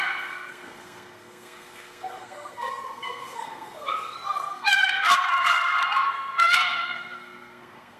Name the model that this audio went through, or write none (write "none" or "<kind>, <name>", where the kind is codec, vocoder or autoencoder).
codec, SNAC